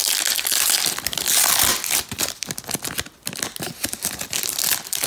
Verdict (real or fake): real